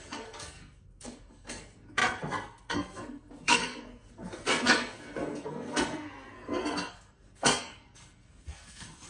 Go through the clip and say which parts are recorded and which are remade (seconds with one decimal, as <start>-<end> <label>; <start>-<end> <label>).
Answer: 0.0-9.1 remade